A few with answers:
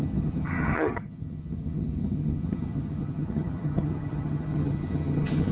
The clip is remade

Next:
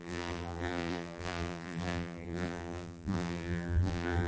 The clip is remade